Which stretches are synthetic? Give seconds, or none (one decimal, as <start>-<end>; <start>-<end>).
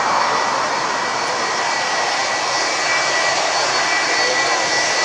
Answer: none